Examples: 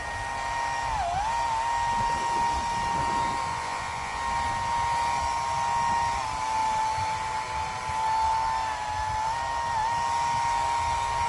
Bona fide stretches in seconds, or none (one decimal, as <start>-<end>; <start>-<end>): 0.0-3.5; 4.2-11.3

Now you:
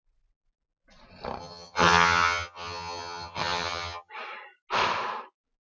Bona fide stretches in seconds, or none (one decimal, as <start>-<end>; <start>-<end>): 0.0-1.4; 4.1-5.7

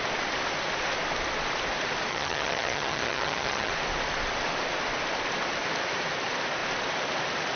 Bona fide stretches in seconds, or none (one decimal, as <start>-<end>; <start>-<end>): 0.0-2.1; 3.7-7.5

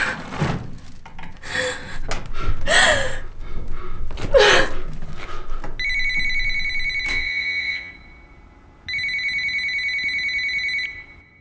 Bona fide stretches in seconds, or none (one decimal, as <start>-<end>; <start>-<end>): 0.0-7.1; 7.9-11.4

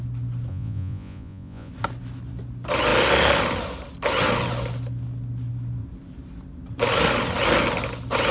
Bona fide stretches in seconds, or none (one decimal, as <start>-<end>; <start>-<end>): 0.0-0.5; 1.7-8.3

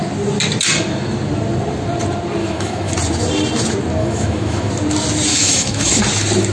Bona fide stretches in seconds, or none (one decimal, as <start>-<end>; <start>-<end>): 0.0-2.4; 2.9-4.0; 4.7-5.3; 6.0-6.5

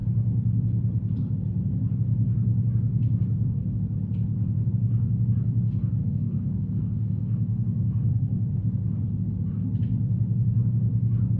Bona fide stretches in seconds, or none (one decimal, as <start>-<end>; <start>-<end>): 0.0-6.0; 8.5-11.4

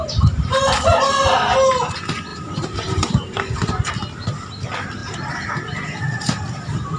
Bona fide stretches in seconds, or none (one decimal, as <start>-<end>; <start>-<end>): 0.0-2.3; 3.9-5.0; 6.4-7.0